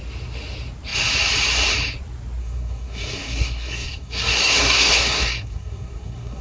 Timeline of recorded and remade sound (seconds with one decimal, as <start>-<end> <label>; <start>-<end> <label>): 0.0-2.4 recorded; 2.4-6.4 remade